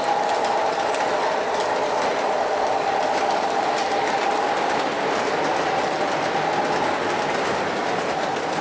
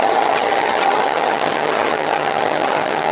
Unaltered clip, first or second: first